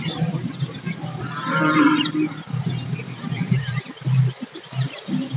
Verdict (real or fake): fake